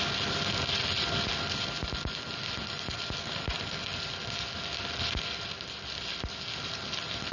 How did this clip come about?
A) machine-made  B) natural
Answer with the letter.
B